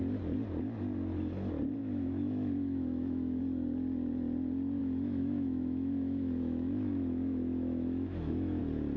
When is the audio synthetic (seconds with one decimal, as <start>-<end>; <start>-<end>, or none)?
1.8-3.4; 4.8-8.6